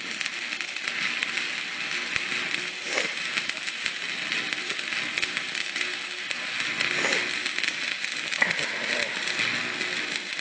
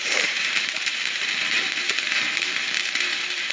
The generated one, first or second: second